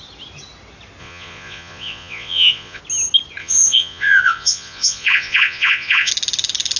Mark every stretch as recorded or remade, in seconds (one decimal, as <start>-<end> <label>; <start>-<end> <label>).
0.0-1.0 recorded; 1.0-2.8 remade; 2.8-3.4 recorded; 3.4-6.1 remade; 6.1-6.8 recorded